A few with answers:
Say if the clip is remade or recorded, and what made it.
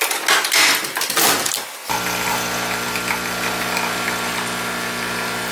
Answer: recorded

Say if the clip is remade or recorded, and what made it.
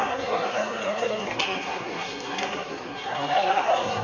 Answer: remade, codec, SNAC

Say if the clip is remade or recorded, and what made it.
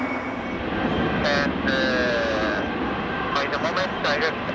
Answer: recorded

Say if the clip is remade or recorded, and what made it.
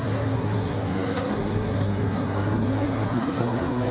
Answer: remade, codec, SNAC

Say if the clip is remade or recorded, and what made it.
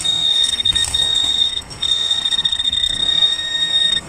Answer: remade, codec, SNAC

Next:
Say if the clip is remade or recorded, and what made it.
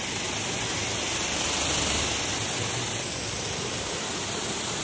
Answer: recorded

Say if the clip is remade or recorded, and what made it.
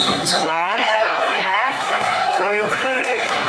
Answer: remade, codec, SNAC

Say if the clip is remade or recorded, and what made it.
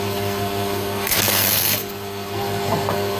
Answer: remade, codec, SNAC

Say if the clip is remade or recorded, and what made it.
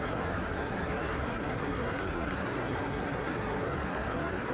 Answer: remade, codec, SNAC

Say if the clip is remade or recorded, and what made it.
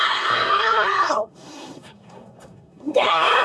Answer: remade, codec, SNAC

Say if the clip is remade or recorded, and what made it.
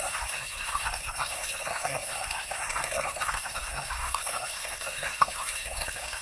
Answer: remade, codec, SNAC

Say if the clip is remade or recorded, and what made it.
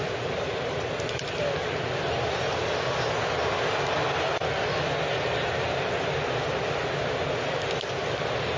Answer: recorded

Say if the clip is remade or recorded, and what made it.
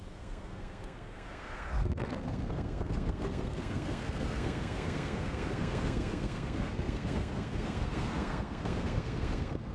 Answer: remade, codec, SNAC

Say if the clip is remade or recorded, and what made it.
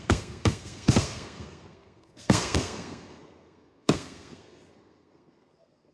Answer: remade, codec, SNAC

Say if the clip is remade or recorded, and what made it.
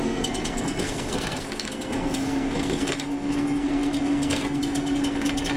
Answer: remade, codec, SNAC